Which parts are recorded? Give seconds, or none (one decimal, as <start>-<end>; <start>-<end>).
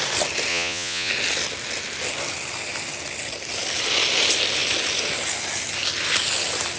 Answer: 0.0-0.5; 1.1-6.8